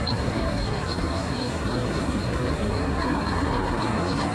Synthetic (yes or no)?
yes